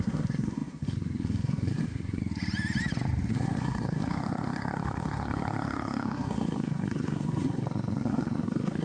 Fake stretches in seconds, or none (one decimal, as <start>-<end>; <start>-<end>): 0.0-2.2; 3.3-8.8